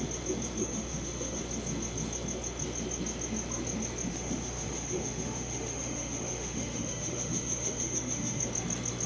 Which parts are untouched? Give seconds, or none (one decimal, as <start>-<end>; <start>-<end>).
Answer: 0.0-0.6; 1.4-4.1; 8.4-9.1